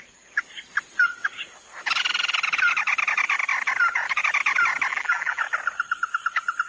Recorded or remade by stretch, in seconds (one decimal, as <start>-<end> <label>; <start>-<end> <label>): 0.0-4.9 recorded; 4.9-5.4 remade; 5.4-6.7 recorded